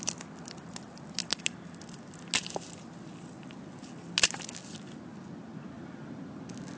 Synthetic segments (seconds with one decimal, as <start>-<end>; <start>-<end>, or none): none